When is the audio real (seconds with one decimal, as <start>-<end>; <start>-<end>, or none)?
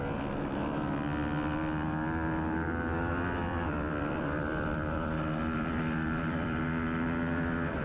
0.0-3.5; 6.6-7.8